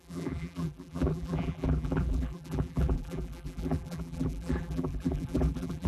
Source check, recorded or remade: remade